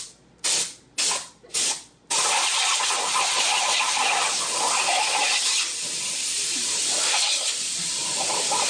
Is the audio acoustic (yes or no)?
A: yes